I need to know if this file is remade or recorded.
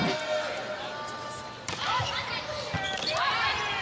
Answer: recorded